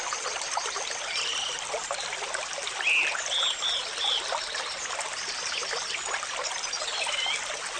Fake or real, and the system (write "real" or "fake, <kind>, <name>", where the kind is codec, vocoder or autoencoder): real